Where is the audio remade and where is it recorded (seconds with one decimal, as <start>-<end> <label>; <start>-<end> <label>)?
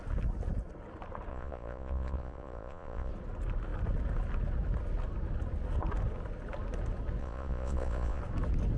0.0-1.3 recorded; 1.3-3.1 remade; 3.1-7.2 recorded; 7.2-8.2 remade; 8.2-8.8 recorded